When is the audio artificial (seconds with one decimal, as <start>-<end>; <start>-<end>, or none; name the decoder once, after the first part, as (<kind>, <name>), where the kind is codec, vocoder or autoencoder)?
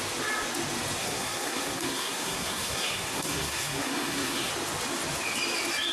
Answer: 1.0-4.5 (codec, SNAC)